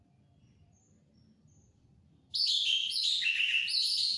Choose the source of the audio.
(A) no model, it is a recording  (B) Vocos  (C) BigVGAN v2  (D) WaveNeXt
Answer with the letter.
C